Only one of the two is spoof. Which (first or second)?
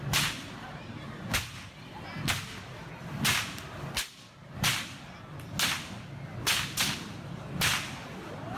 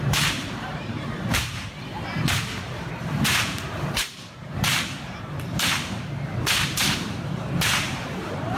second